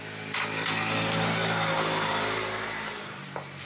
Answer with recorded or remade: recorded